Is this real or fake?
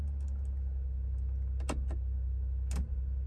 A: real